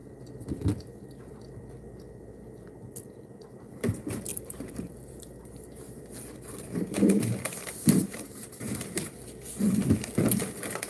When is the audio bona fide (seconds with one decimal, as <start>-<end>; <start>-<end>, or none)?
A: 0.0-4.3; 6.0-8.0; 8.6-10.9